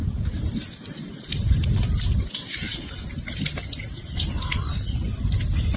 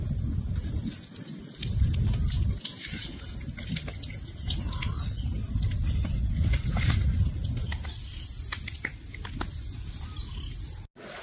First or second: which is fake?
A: first